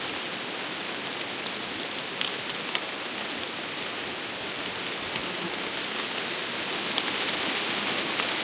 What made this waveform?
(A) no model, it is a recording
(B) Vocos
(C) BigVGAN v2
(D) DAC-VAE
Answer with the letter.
A